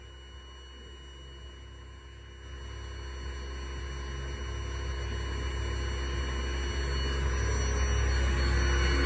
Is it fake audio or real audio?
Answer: real